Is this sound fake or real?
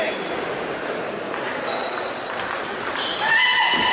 real